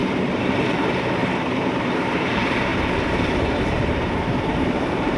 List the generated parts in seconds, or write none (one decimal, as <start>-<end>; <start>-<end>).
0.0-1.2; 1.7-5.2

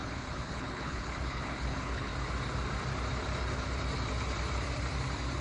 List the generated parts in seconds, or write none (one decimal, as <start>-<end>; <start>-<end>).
0.0-2.1

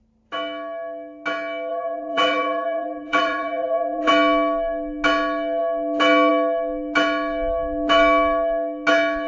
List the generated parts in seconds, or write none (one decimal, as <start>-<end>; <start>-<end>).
1.7-4.1

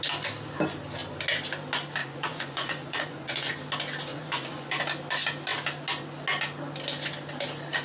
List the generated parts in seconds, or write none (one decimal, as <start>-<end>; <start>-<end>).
2.0-3.5; 4.1-4.8

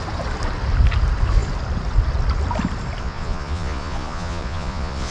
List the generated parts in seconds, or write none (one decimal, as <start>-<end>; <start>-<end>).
3.0-5.1